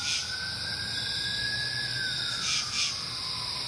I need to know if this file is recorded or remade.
recorded